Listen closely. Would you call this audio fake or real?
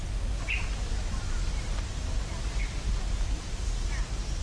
real